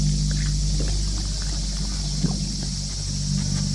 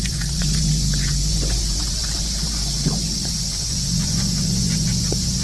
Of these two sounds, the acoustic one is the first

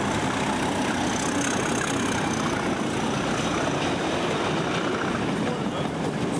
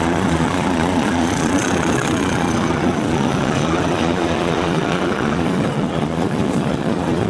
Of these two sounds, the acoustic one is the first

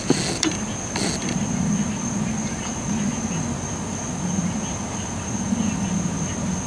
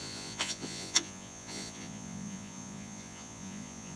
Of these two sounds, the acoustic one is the first